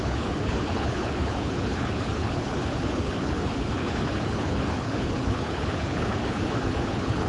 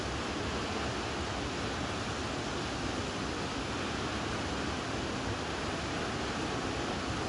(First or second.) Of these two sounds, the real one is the second